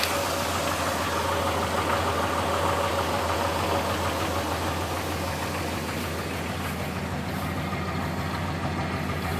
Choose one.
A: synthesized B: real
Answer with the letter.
B